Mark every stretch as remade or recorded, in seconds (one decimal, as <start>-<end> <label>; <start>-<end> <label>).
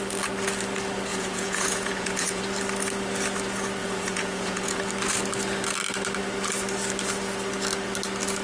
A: 0.0-1.1 recorded; 1.1-2.4 remade; 2.4-3.8 recorded; 3.8-4.8 remade; 4.8-8.4 recorded